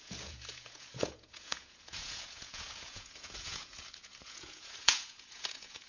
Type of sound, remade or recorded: remade